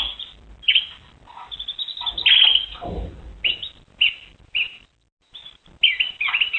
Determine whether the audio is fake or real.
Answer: real